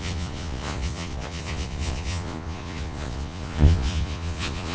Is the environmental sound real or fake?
fake